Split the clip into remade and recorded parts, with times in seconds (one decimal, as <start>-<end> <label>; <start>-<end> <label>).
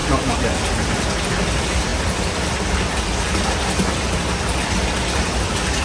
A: 0.0-5.8 recorded